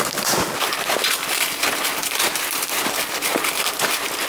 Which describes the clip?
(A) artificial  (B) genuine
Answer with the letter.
B